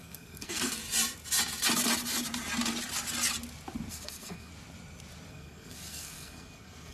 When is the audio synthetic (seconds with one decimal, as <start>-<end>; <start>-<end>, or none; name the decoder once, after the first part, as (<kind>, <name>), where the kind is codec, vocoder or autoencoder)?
0.0-0.8 (codec, SNAC); 3.9-4.5; 5.3-6.9